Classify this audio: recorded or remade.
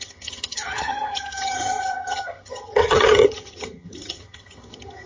remade